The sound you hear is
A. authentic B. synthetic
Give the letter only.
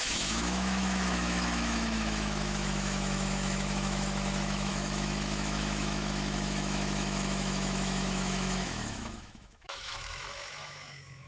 B